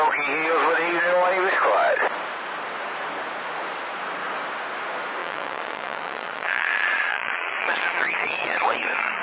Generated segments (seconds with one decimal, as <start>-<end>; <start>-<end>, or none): 5.2-9.2